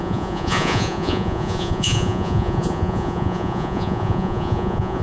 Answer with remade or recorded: remade